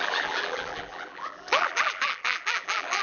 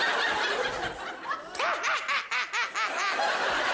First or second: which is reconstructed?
first